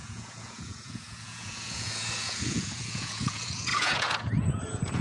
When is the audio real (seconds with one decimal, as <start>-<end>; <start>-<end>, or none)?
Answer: none